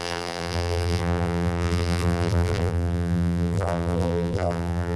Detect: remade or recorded remade